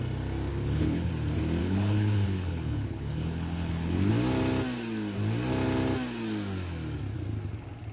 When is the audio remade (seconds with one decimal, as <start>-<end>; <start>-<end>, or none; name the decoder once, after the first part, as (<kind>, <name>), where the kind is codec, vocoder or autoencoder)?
0.5-1.1 (codec, HILCodec); 1.6-4.1